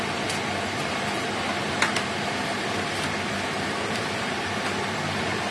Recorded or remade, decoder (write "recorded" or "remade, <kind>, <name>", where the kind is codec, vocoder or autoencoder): recorded